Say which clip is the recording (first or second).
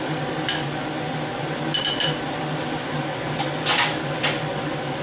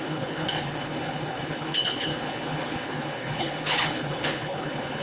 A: first